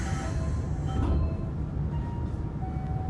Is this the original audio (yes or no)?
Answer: yes